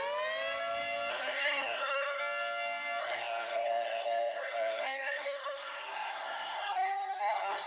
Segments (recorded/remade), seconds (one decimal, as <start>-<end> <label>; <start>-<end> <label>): 0.0-1.1 recorded; 1.1-2.2 remade; 2.2-3.0 recorded; 3.0-7.7 remade

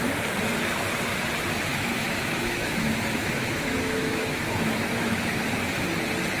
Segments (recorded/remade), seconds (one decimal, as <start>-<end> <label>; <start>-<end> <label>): 0.0-1.7 recorded; 1.7-5.5 remade; 5.5-6.4 recorded

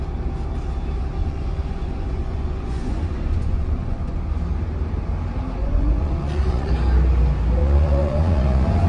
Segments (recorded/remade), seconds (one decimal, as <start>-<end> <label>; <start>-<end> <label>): 0.0-1.2 recorded; 1.2-4.2 remade; 4.2-5.6 recorded; 5.6-6.7 remade; 6.7-7.6 recorded; 7.6-8.9 remade

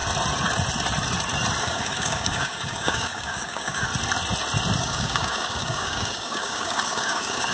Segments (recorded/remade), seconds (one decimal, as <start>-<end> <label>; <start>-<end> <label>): 0.0-1.6 recorded; 1.6-3.9 remade; 3.9-4.8 recorded; 4.8-7.5 remade

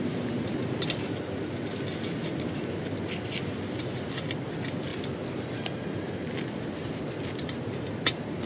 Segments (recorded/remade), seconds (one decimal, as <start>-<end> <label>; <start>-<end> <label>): 0.0-8.5 recorded